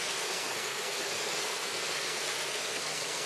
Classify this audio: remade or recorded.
remade